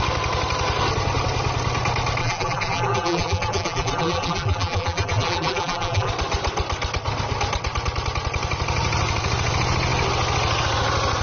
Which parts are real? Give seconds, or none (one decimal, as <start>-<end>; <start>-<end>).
0.0-2.2; 6.1-11.2